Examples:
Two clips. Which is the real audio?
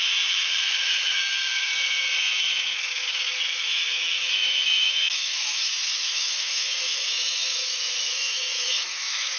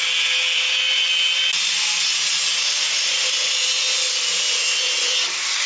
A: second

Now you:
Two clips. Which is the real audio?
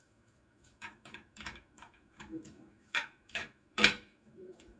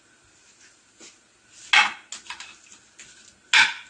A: second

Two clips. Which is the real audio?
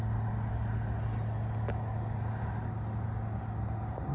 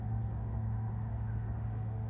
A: first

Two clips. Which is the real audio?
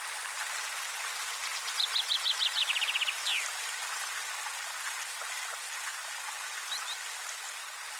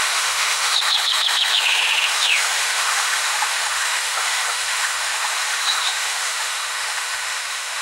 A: first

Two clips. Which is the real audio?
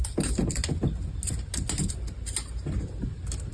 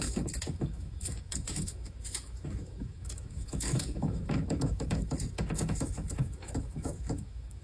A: first